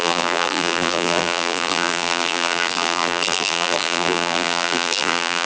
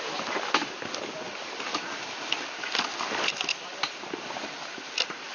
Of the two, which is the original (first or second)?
second